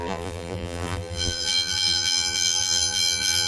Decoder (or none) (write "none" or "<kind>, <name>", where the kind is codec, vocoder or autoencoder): vocoder, BigVGAN v2